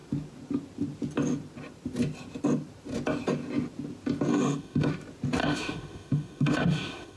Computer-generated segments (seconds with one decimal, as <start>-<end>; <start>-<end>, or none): 4.3-4.9; 5.4-7.2